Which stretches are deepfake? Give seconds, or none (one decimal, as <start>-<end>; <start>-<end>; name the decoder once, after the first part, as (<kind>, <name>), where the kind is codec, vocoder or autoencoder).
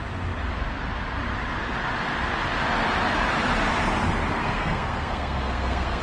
4.4-6.0 (codec, SNAC)